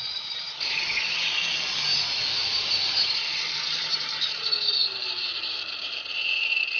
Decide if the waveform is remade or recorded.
remade